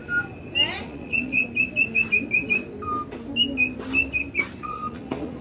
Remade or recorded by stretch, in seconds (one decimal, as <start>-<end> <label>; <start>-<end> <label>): 0.0-0.7 recorded; 0.7-1.4 remade; 1.4-4.6 recorded; 4.6-5.4 remade